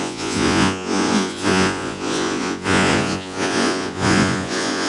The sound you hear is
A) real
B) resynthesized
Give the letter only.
B